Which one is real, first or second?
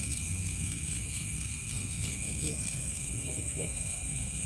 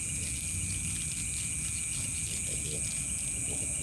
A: second